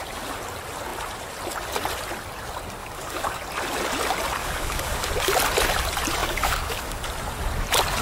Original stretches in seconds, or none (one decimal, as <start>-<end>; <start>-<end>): 0.0-2.8; 3.4-4.4; 5.1-6.2; 7.1-8.0